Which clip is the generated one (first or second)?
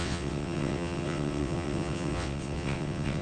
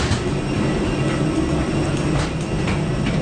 first